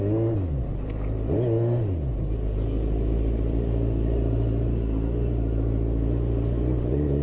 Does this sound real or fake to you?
real